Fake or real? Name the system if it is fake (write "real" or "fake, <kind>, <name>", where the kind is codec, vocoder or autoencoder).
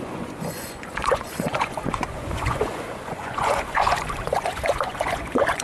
fake, vocoder, Vocos